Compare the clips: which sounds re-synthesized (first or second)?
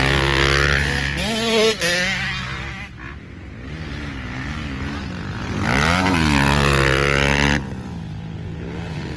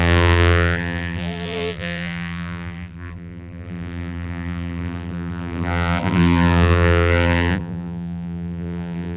second